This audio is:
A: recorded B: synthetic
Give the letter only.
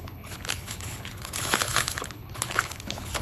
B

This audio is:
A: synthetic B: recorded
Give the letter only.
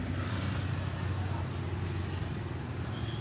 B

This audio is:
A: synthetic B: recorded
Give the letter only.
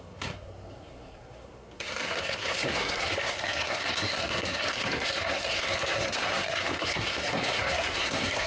A